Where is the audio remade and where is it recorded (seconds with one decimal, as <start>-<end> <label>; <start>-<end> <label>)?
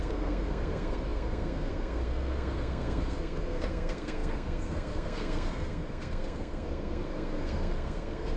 0.0-8.4 remade